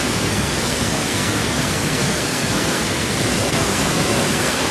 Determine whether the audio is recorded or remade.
remade